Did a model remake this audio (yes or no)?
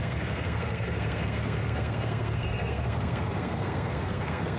yes